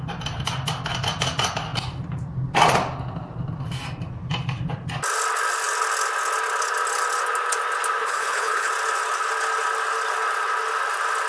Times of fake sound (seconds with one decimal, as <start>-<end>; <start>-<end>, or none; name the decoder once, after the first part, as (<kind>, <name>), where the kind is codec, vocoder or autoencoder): 8.0-8.7 (codec, HILCodec)